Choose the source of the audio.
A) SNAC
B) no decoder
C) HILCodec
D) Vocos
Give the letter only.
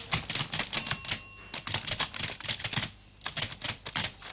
B